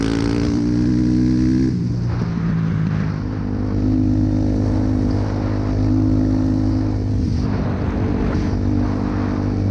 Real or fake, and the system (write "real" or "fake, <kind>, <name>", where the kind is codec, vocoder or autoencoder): real